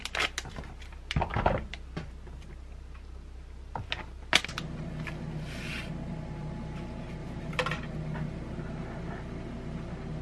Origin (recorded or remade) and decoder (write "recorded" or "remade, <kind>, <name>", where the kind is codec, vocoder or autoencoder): recorded